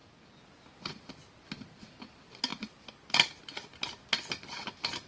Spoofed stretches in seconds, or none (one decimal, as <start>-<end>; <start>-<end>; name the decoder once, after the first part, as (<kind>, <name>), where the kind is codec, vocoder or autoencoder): 2.5-3.4 (vocoder, BigVGAN v2)